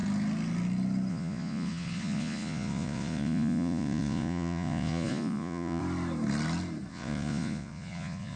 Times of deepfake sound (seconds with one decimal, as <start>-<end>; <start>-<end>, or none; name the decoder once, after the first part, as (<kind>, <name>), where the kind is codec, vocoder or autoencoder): 1.1-5.8 (vocoder, Vocos); 6.9-8.4